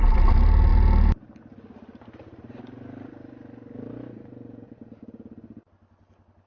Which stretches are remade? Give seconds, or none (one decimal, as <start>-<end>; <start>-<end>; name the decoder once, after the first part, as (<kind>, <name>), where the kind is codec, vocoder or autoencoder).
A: none